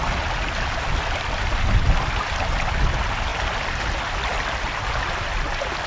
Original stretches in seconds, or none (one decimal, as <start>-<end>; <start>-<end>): 0.0-5.9